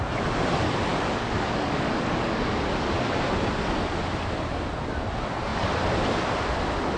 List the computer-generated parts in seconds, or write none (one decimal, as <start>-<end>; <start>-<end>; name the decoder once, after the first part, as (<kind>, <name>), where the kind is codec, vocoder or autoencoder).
0.9-2.7 (codec, DAC)